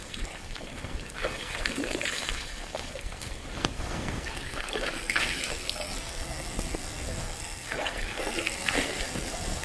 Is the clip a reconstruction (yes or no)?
yes